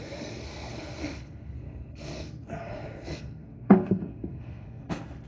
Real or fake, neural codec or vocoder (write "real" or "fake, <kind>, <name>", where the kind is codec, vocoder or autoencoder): fake, codec, SNAC